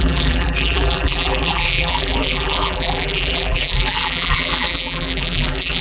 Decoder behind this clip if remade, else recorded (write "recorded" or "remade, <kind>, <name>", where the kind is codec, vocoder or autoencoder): remade, vocoder, BigVGAN v2